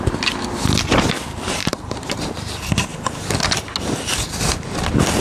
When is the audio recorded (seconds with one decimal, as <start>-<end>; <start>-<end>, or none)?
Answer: 0.0-1.6; 2.1-2.9; 3.4-5.2